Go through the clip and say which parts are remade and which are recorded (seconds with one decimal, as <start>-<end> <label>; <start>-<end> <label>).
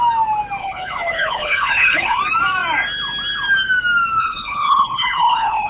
0.0-0.6 recorded; 0.6-2.2 remade; 2.2-4.2 recorded; 4.2-5.7 remade